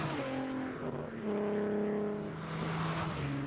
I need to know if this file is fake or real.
real